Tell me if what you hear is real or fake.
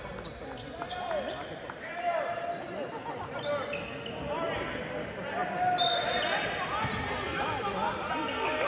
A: real